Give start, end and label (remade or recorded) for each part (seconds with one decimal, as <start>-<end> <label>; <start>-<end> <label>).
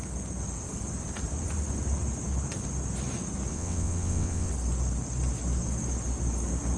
0.0-3.5 recorded; 3.5-4.5 remade; 4.5-6.8 recorded